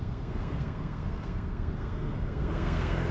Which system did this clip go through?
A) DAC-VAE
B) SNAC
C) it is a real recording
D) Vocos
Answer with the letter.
B